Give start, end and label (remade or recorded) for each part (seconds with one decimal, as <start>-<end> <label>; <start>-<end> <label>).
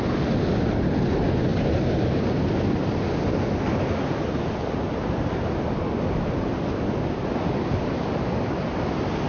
0.0-9.3 recorded